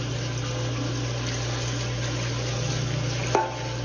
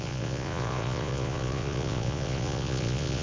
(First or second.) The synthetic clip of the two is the second